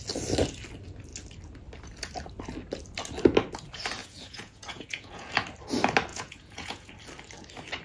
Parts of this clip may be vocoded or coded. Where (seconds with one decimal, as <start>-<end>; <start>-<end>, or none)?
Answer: 4.0-5.3; 6.1-6.9